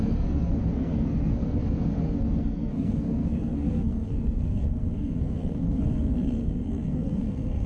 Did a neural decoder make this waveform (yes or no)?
yes